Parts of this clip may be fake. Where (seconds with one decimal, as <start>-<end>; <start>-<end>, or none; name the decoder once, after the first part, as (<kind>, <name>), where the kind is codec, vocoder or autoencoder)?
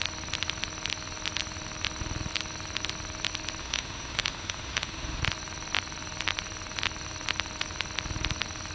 3.6-5.2 (autoencoder, DAC-VAE)